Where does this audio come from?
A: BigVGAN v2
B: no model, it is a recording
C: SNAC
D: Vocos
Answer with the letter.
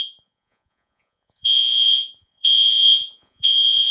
D